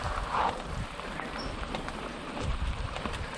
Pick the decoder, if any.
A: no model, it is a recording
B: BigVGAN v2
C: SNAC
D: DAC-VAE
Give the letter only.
B